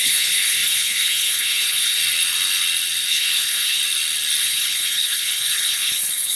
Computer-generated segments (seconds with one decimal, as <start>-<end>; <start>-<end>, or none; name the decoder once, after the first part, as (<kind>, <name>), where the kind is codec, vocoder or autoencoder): 0.0-2.0 (codec, HILCodec); 3.1-3.8; 4.4-6.4